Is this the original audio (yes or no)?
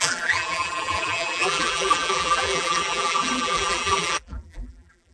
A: no